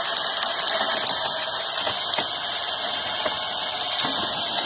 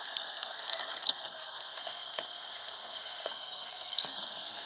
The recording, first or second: first